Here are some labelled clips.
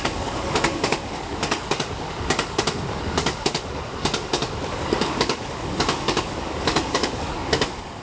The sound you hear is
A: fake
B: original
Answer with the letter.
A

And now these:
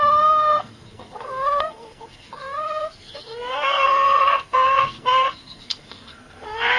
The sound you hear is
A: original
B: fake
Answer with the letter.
B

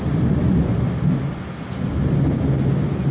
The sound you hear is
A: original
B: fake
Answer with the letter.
A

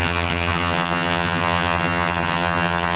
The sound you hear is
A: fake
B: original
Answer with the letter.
A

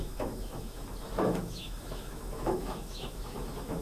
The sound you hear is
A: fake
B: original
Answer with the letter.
A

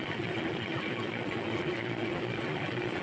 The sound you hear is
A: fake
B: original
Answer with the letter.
A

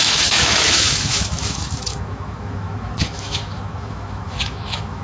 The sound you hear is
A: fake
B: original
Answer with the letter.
A